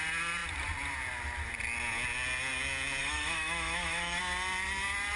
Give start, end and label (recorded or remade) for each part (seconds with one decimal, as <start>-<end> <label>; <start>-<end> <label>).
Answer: 0.0-3.0 recorded; 3.0-4.2 remade; 4.2-5.2 recorded